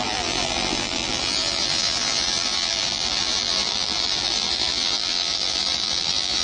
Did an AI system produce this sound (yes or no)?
yes